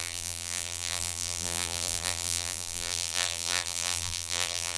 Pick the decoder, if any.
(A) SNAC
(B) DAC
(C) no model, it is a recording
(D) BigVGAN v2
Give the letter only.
D